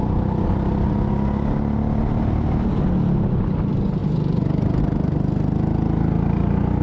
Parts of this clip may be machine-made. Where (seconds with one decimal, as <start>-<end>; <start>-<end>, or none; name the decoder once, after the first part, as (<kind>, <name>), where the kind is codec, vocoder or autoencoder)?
none